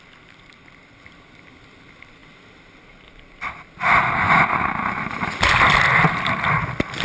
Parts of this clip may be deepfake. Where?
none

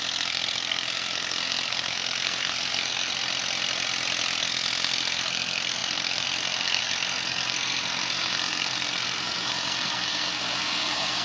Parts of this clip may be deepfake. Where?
0.0-3.1; 4.4-11.2

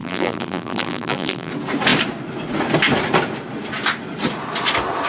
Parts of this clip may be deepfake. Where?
0.0-1.5

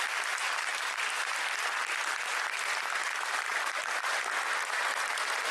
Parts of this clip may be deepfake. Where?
0.7-1.3; 3.5-4.1

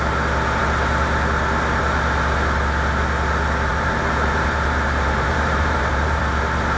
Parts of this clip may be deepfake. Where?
3.7-6.2